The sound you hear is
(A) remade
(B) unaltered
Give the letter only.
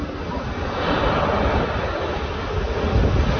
B